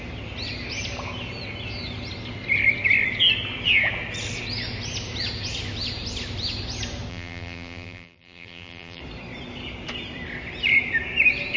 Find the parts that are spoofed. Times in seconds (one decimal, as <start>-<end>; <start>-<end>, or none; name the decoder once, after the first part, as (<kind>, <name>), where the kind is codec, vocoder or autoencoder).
7.1-9.0 (vocoder, BigVGAN v2)